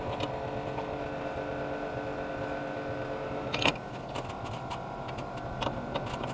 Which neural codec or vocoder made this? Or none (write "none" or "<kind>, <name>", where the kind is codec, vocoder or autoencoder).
none